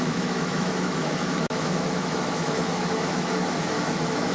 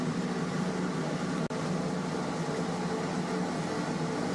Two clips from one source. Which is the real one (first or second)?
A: second